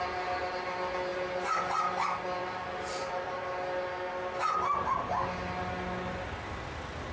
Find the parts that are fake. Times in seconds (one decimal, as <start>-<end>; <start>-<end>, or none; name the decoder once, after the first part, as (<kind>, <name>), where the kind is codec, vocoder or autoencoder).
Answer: 2.4-3.3 (vocoder, BigVGAN v2)